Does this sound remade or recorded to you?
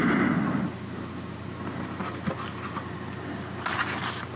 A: recorded